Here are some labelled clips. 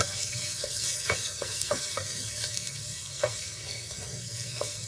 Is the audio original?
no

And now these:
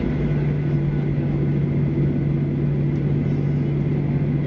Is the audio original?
yes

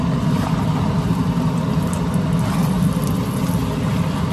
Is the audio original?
yes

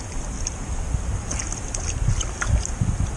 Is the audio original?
yes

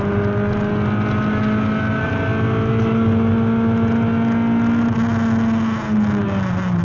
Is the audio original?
yes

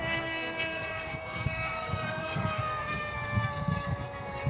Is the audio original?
no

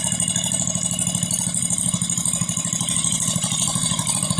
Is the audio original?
yes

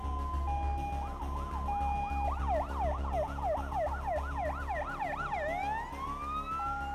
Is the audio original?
yes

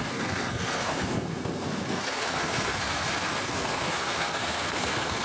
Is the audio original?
no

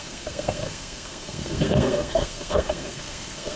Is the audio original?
no